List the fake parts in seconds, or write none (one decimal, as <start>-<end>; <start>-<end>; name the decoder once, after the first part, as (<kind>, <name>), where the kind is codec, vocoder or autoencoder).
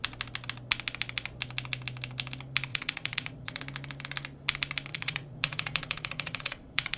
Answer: 2.7-3.6 (vocoder, Vocos); 4.9-7.0